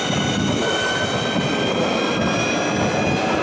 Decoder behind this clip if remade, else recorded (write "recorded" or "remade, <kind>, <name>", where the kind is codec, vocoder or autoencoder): recorded